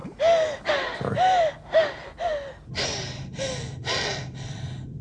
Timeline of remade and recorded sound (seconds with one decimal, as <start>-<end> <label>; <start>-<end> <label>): 0.0-5.0 recorded